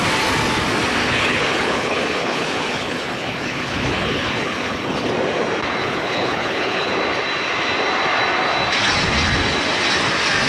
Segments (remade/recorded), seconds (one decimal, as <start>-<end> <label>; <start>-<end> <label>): 0.0-1.0 recorded; 1.0-5.1 remade; 5.1-5.8 recorded; 5.8-6.9 remade; 6.9-10.5 recorded